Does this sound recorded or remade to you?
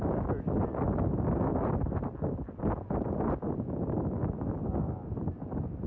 recorded